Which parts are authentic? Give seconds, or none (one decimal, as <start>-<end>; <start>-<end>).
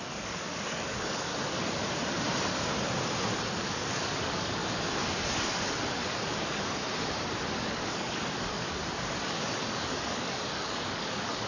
1.3-3.6; 4.6-5.9; 6.8-7.6